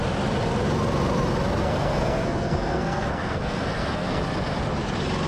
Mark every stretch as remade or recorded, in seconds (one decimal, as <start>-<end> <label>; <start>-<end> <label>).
0.0-1.6 recorded; 1.6-4.2 remade; 4.2-5.3 recorded